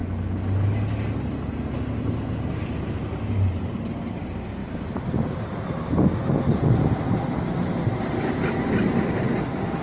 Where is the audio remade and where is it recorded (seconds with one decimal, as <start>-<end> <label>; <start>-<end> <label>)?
0.0-3.6 recorded; 3.6-9.8 remade